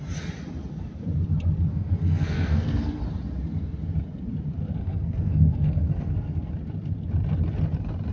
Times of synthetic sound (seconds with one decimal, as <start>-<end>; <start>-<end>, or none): 1.7-3.0; 4.8-6.5